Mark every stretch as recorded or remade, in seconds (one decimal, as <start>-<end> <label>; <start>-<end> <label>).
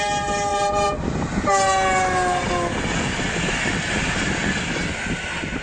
0.0-0.5 recorded; 0.5-1.4 remade; 1.4-5.6 recorded